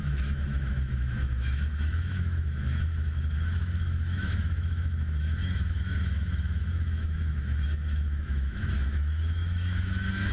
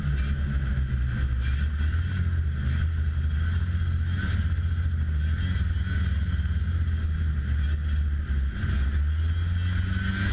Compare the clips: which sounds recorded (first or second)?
second